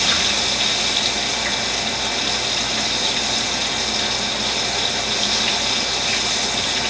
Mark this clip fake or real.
real